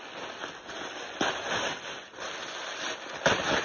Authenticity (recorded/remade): remade